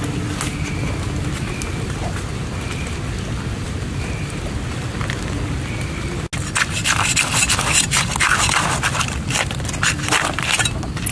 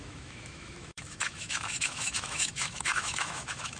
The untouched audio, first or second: first